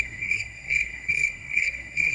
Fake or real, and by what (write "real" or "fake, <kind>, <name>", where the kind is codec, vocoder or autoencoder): fake, codec, SNAC